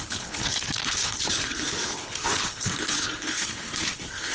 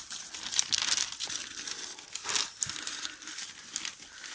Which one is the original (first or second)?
second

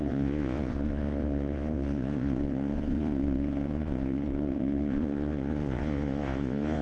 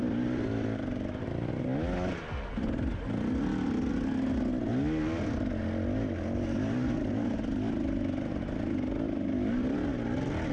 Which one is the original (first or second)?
second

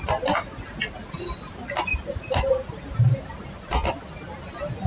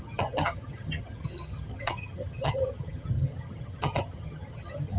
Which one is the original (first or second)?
first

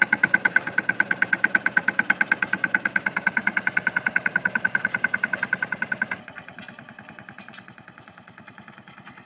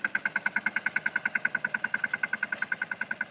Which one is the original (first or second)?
second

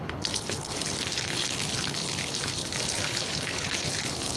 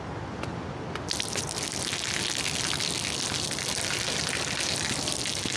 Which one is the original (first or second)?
second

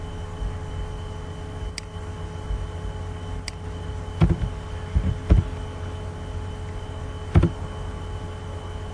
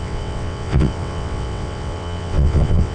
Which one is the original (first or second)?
first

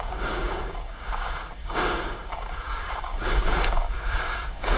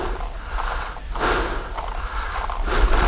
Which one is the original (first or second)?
second